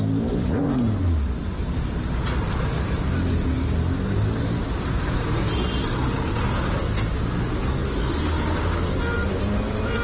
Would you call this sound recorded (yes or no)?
yes